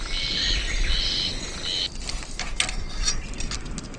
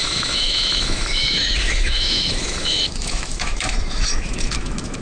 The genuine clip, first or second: first